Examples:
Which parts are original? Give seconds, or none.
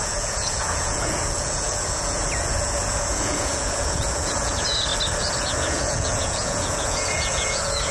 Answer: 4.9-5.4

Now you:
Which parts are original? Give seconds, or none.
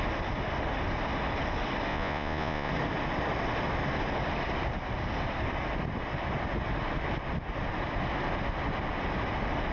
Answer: 0.0-1.9; 2.7-9.7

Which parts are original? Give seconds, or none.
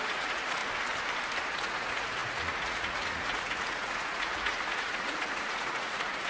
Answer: 0.6-1.6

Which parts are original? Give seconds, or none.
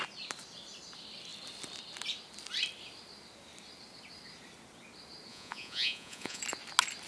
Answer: 0.0-5.3; 6.4-7.1